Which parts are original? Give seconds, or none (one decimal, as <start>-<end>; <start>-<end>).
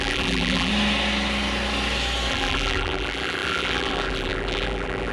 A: 0.7-2.3